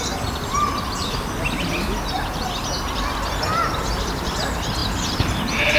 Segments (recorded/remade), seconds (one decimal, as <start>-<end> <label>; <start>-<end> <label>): 0.0-4.8 recorded; 4.8-5.8 remade